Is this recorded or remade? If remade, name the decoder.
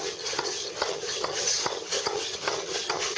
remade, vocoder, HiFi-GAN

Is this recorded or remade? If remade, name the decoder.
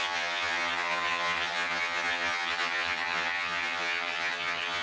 remade, vocoder, HiFi-GAN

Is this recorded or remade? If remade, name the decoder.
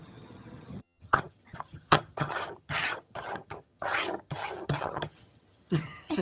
remade, vocoder, HiFi-GAN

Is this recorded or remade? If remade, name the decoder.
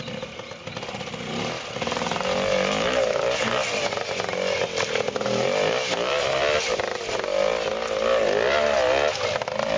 recorded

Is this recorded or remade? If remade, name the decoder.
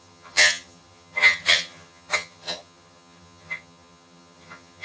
remade, vocoder, HiFi-GAN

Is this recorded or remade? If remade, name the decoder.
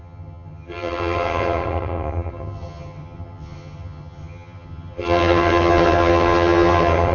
remade, vocoder, HiFi-GAN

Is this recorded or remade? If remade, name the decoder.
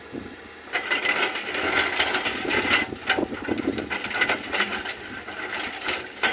recorded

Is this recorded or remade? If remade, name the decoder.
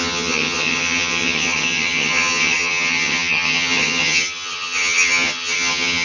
remade, vocoder, HiFi-GAN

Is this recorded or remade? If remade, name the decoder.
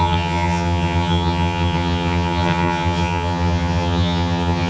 remade, vocoder, HiFi-GAN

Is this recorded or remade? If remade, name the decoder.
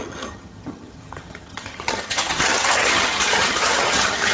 remade, vocoder, HiFi-GAN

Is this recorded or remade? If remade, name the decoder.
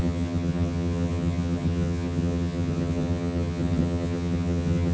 remade, vocoder, HiFi-GAN